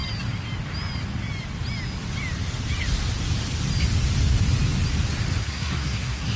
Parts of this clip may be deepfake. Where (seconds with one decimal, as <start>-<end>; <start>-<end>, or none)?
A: 5.4-6.4